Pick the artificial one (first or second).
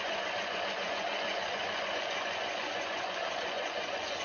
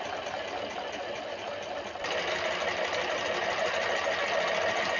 first